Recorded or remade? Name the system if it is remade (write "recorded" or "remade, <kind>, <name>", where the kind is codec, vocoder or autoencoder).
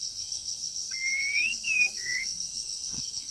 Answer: remade, codec, SNAC